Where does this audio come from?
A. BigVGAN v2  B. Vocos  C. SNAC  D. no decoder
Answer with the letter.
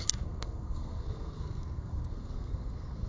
C